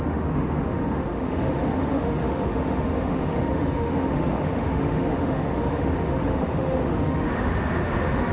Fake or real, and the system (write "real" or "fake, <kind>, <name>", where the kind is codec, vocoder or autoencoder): fake, autoencoder, DAC-VAE